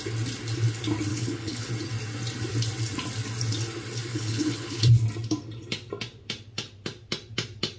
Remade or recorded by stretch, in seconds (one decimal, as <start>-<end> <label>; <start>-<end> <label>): 0.0-1.1 recorded; 1.1-1.7 remade; 1.7-4.1 recorded; 4.1-4.8 remade; 4.8-7.8 recorded